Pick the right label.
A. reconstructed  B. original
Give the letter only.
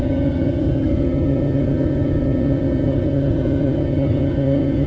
A